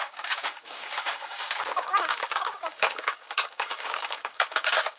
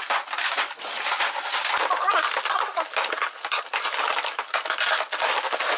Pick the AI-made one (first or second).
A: first